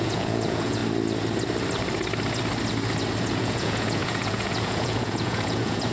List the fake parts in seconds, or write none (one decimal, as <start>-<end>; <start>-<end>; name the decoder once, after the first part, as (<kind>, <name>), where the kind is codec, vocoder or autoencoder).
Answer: 0.0-0.8 (vocoder, Vocos); 3.2-5.9